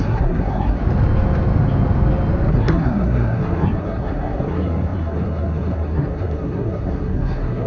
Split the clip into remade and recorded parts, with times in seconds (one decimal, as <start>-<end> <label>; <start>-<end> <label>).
0.0-0.8 remade; 0.8-2.5 recorded; 2.5-7.7 remade